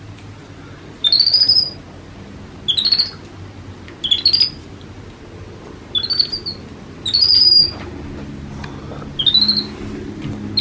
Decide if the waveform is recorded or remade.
recorded